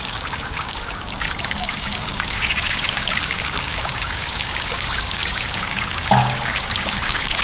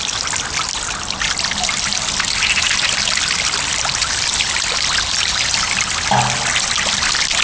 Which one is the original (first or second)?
second